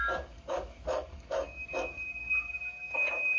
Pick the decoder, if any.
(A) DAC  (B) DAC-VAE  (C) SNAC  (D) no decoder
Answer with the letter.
A